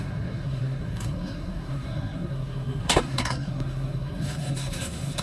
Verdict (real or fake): fake